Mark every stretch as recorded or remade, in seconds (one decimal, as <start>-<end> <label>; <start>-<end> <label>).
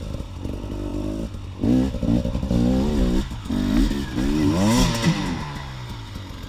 0.0-6.5 recorded